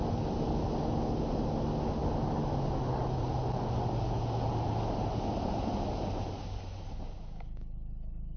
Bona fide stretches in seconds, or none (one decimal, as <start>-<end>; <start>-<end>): 0.0-8.4